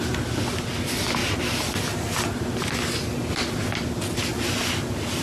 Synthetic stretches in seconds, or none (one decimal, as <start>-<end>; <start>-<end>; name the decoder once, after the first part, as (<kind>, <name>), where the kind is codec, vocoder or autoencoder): none